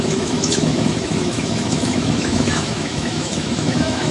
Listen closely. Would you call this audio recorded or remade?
remade